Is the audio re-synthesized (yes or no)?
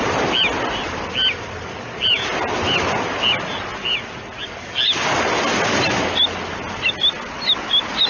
no